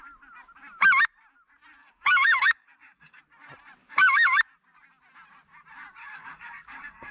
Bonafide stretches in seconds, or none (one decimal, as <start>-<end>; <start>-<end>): 0.0-1.8; 3.2-3.8; 4.4-6.0